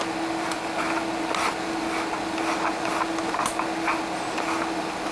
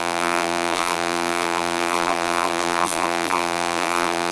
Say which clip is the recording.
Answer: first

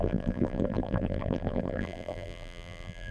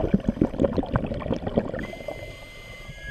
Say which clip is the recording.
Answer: second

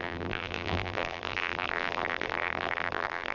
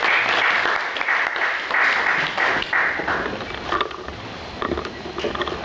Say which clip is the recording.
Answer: second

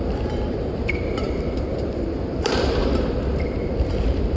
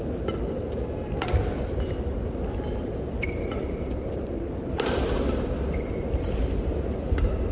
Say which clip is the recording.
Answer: second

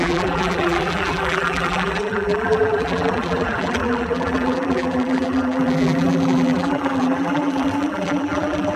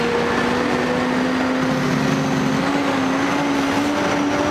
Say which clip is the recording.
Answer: second